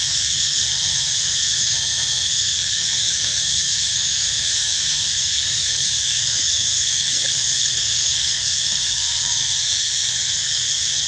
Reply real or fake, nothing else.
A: fake